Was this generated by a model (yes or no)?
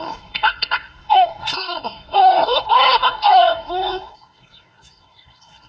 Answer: yes